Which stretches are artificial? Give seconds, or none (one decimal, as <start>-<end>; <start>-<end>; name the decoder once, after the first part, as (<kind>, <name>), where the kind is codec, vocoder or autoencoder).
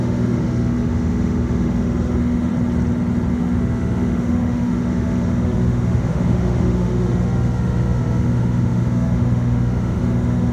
0.0-2.5 (autoencoder, DAC-VAE); 3.3-10.5